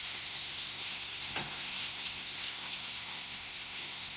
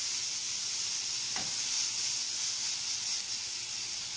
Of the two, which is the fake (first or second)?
first